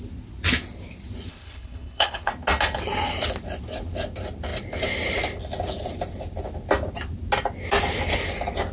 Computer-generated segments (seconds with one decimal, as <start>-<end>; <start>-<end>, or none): 1.3-2.3